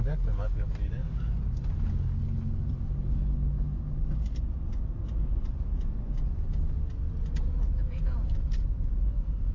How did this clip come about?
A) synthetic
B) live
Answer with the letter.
B